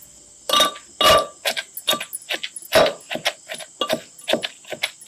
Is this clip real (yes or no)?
yes